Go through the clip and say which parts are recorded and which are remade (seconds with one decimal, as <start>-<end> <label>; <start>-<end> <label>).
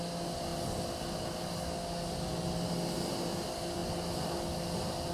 0.0-5.1 recorded